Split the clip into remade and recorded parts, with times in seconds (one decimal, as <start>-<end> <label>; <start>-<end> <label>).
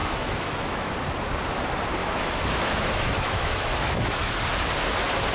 0.0-0.9 remade; 0.9-2.0 recorded; 2.0-4.4 remade; 4.4-5.3 recorded